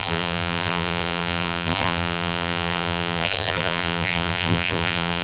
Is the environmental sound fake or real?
fake